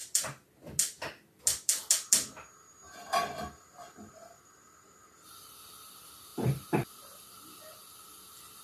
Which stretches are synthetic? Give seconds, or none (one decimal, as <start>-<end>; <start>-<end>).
none